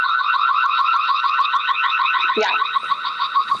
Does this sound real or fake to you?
real